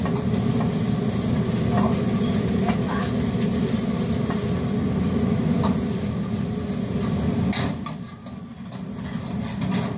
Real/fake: real